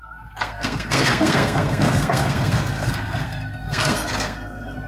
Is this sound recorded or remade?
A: remade